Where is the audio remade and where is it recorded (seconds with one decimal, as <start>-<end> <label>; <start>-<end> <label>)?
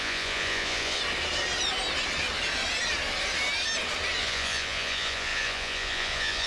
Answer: 0.0-1.0 remade; 1.0-4.2 recorded; 4.2-6.5 remade